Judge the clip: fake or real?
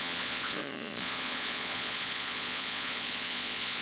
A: fake